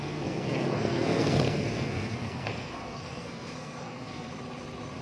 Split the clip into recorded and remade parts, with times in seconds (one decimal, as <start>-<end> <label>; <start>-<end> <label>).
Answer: 0.0-4.3 remade; 4.3-5.0 recorded